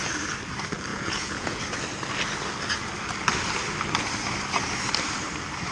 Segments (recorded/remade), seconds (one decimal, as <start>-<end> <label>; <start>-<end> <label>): 0.0-0.9 recorded; 0.9-1.6 remade; 1.6-5.7 recorded